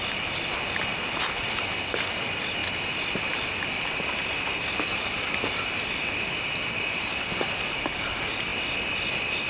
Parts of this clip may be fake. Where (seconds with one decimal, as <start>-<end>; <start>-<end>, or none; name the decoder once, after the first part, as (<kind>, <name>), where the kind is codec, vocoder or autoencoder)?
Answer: none